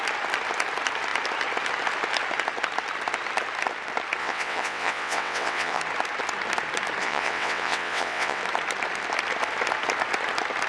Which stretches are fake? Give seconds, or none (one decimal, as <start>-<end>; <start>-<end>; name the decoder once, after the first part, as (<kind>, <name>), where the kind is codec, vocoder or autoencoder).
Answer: 4.2-5.8 (vocoder, WaveNeXt); 7.0-8.4